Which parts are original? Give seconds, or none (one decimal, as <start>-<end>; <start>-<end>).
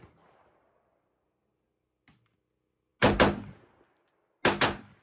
0.0-5.0